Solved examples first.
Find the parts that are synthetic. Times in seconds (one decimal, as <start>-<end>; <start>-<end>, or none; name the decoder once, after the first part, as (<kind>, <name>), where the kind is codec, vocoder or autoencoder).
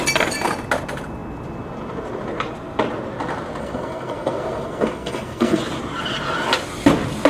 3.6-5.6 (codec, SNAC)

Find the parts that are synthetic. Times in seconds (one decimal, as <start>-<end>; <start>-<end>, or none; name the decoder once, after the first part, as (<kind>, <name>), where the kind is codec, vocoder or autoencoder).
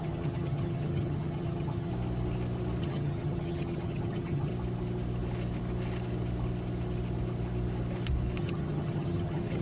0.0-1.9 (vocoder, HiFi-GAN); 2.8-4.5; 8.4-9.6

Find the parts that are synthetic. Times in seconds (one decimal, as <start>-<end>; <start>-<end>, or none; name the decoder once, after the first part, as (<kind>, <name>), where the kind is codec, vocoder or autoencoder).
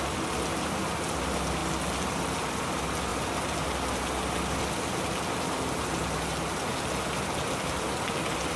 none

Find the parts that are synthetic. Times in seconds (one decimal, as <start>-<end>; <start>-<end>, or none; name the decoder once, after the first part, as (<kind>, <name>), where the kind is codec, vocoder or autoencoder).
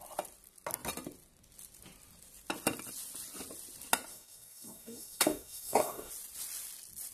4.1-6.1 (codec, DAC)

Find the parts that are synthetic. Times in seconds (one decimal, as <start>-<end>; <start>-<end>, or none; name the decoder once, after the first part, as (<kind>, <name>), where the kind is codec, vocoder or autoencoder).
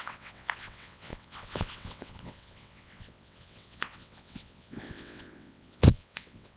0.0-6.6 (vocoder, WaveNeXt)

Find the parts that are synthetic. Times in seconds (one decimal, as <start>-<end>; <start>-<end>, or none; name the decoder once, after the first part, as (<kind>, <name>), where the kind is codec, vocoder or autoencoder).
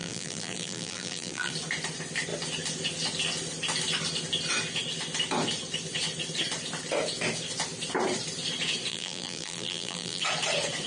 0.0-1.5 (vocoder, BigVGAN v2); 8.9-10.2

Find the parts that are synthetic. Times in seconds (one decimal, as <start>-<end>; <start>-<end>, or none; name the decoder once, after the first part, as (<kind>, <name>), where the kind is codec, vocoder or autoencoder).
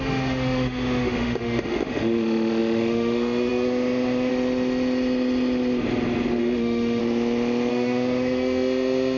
0.0-4.3 (autoencoder, DAC-VAE); 6.4-7.0; 7.7-9.2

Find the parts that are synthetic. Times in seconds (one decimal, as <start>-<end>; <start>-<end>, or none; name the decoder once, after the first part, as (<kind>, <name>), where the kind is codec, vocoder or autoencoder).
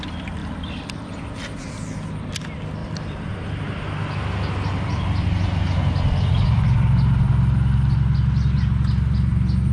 0.4-1.2 (vocoder, BigVGAN v2); 2.8-3.5